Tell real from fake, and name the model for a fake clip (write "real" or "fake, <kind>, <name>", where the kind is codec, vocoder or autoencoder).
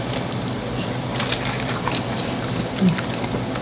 real